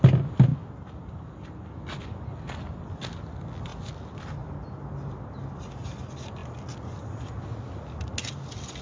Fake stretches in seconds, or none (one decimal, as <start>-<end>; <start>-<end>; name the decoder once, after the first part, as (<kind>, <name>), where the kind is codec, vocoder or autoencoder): none